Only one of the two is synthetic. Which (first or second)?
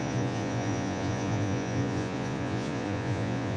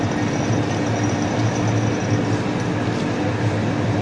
first